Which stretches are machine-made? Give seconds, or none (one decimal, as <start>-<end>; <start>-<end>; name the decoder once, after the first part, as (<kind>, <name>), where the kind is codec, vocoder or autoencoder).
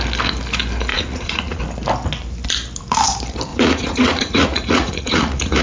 0.9-1.6 (vocoder, Vocos); 3.5-5.6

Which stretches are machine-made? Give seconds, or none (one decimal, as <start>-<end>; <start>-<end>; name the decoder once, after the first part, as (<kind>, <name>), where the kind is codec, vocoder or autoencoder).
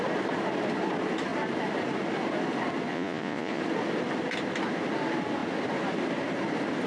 2.9-3.6 (vocoder, Vocos)